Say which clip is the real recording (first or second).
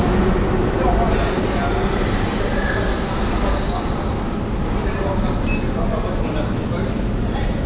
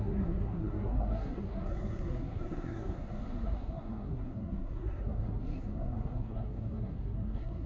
first